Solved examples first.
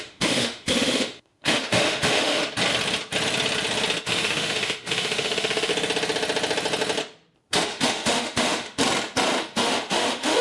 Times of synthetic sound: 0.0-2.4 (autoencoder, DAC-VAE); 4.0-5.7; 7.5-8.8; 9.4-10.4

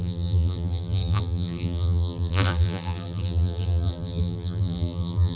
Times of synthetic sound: 0.0-5.4 (vocoder, BigVGAN v2)